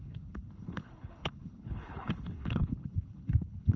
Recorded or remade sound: remade